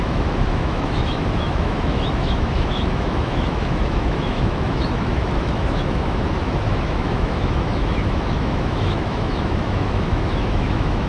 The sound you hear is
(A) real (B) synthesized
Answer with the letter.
B